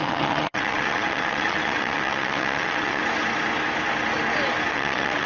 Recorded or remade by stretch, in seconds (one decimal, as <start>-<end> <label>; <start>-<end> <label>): 0.0-3.0 remade; 3.0-4.7 recorded; 4.7-5.3 remade